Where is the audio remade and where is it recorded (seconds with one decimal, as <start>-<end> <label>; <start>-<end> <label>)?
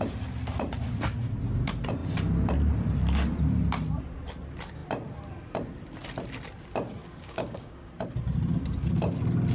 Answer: 0.0-7.0 recorded; 7.0-7.9 remade; 7.9-9.5 recorded